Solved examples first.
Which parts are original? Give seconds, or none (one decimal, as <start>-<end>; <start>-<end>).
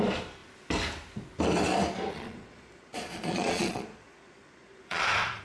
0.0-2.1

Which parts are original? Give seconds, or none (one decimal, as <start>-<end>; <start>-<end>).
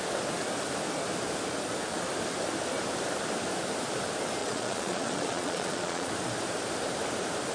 0.0-4.4; 6.1-7.5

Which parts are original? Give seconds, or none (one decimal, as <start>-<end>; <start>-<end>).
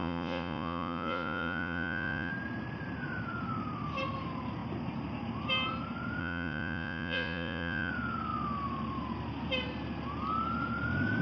2.3-6.2; 7.9-11.2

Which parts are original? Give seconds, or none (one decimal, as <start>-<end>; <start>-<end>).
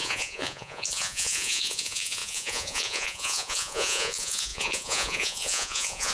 none